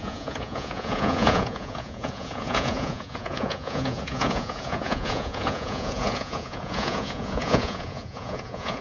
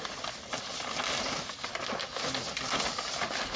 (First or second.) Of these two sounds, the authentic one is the second